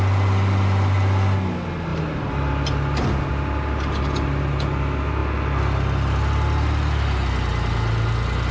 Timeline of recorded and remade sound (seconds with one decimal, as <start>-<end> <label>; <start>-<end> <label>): 0.0-1.9 recorded; 1.9-2.5 remade; 2.5-8.5 recorded